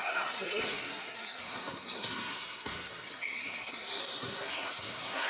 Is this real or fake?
fake